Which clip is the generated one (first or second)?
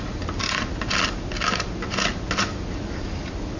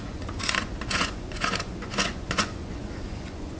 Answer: second